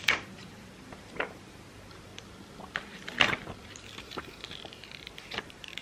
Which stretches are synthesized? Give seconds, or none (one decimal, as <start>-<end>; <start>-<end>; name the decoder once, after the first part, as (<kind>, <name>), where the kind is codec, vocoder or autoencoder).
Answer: 0.0-2.1 (vocoder, BigVGAN v2); 4.0-5.8